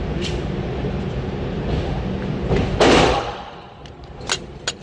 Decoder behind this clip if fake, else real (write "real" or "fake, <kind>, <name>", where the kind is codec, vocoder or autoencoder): real